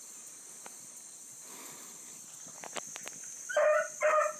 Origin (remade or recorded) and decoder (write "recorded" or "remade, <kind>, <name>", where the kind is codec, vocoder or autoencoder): recorded